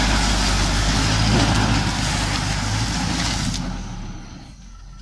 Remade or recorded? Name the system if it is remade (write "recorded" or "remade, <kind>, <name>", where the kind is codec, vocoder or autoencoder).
recorded